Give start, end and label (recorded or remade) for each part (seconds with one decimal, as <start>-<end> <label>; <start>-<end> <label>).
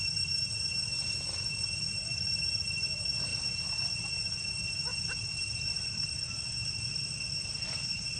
0.0-3.3 remade; 3.3-4.0 recorded; 4.0-8.2 remade